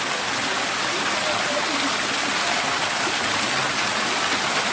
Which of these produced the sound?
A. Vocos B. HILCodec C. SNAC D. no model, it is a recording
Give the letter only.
D